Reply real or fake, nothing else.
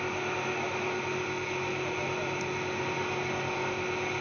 real